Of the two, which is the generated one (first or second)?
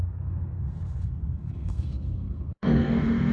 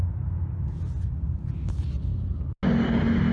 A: first